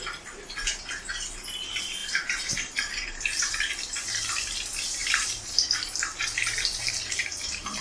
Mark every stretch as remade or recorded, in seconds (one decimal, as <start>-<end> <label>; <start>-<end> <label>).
0.0-2.0 recorded; 2.0-3.6 remade; 3.6-5.0 recorded; 5.0-7.8 remade